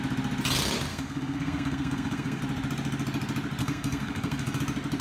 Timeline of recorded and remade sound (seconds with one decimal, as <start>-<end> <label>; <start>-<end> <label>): 0.0-0.9 recorded; 0.9-2.4 remade; 2.4-3.6 recorded; 3.6-4.6 remade; 4.6-5.0 recorded